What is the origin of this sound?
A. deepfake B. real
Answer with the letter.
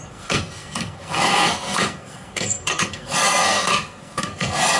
A